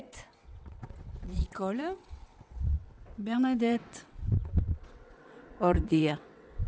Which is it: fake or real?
fake